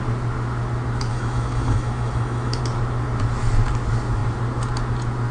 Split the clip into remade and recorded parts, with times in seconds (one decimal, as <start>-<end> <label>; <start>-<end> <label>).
0.0-1.1 recorded; 1.1-2.6 remade; 2.6-5.3 recorded